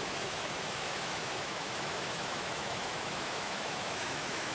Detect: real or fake fake